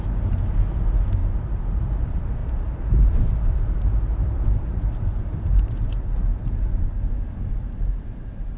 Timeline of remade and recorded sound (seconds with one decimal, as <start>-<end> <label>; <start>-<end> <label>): 0.0-1.2 recorded; 1.2-1.9 remade; 1.9-2.4 recorded; 2.4-7.1 remade; 7.1-8.6 recorded